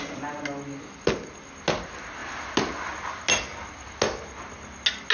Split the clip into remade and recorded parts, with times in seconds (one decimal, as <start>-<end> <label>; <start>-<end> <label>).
0.0-5.1 recorded